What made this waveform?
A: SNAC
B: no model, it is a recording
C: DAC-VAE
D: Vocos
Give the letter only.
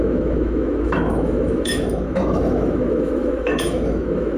C